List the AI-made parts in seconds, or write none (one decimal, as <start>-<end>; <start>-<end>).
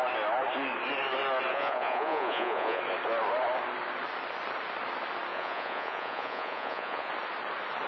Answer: 1.5-2.8; 5.3-7.1